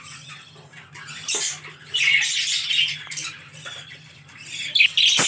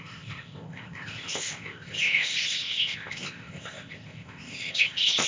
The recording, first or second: first